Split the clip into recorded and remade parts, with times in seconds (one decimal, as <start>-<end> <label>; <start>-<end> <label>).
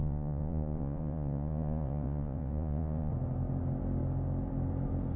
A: 0.0-3.1 remade; 3.1-5.2 recorded